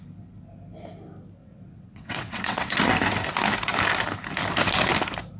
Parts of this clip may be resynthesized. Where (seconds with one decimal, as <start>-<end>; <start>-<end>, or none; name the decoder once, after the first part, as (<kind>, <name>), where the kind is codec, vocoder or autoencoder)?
1.4-2.8 (vocoder, WaveNeXt)